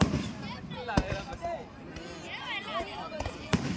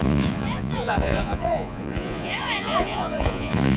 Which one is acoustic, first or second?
first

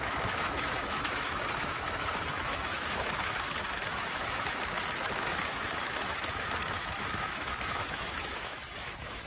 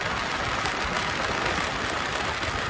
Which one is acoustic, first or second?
second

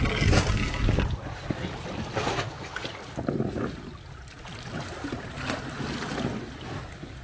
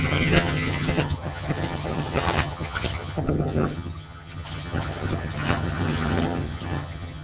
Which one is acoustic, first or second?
first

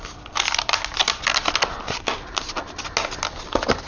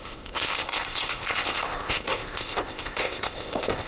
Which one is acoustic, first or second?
first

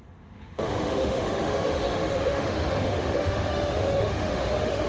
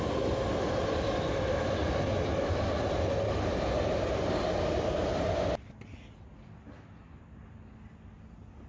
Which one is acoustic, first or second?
second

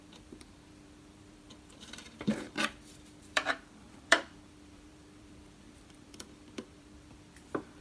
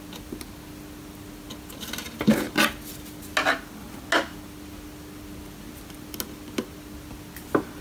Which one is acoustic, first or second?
second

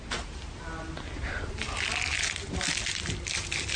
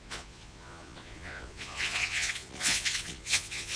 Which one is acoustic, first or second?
first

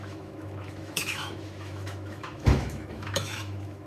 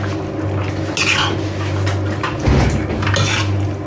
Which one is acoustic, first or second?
second